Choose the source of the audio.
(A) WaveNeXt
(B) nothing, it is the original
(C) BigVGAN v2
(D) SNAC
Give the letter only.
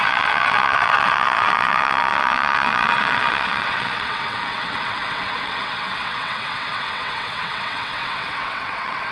A